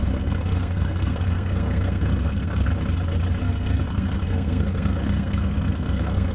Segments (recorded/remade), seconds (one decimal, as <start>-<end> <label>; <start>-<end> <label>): 0.0-2.7 remade; 2.7-3.4 recorded; 3.4-6.3 remade